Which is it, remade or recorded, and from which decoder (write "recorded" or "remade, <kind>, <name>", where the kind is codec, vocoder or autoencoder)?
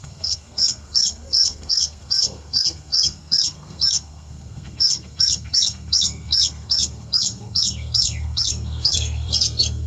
remade, codec, SNAC